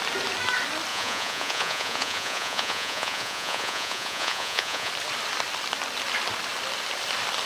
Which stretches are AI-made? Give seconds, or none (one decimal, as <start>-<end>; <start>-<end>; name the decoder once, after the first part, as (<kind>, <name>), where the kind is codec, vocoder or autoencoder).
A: 0.9-4.9 (vocoder, Vocos)